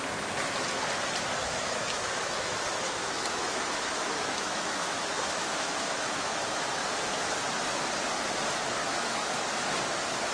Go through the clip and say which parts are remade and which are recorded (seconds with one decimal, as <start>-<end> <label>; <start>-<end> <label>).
0.0-1.4 recorded; 1.4-6.4 remade; 6.4-8.8 recorded; 8.8-9.3 remade; 9.3-10.3 recorded